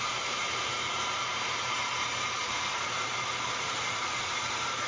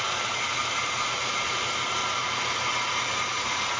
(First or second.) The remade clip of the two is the first